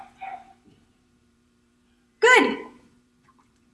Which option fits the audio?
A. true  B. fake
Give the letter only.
B